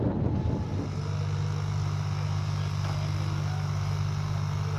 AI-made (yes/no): no